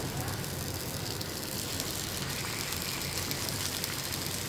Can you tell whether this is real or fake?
real